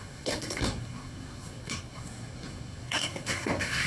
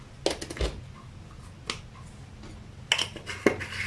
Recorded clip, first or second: second